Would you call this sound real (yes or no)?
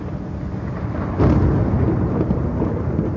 yes